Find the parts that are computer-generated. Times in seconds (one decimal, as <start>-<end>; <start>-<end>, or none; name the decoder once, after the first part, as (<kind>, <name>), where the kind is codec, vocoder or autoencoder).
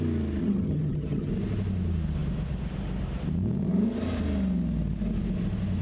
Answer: 0.4-1.3 (vocoder, HiFi-GAN)